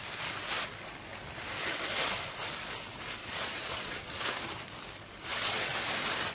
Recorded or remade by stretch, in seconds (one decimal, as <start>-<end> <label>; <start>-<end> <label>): 0.0-3.2 recorded; 3.2-4.2 remade; 4.2-6.3 recorded